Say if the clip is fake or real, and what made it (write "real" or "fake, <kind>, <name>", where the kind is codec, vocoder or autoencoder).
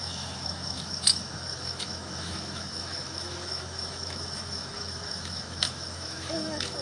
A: fake, autoencoder, DAC-VAE